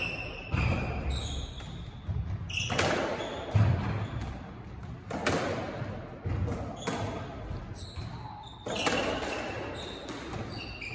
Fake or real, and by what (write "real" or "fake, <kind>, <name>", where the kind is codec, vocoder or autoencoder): real